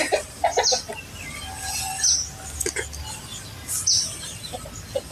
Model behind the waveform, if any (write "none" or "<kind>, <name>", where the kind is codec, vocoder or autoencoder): vocoder, BigVGAN v2